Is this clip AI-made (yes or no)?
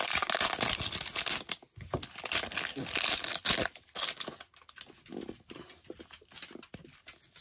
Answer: no